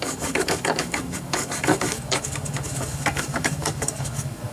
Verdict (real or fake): fake